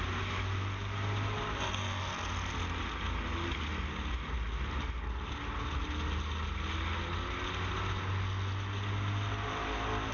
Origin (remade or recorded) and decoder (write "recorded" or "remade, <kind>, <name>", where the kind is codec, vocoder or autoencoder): recorded